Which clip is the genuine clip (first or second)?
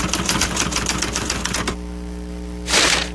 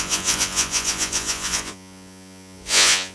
first